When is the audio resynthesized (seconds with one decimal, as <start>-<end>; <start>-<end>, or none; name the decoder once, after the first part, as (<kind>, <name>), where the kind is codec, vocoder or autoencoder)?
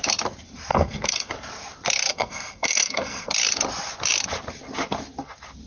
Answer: 0.7-1.3 (codec, SNAC); 2.1-3.3